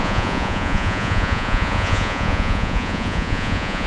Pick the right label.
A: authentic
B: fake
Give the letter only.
B